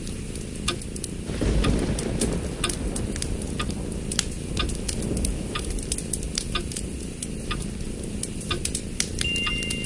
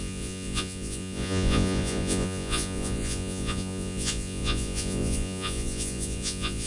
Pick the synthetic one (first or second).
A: second